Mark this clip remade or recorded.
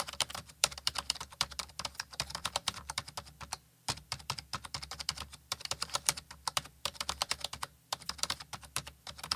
remade